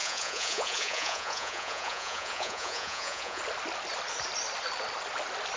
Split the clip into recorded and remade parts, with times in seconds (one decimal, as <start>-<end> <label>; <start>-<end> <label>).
0.0-3.4 remade; 3.4-5.6 recorded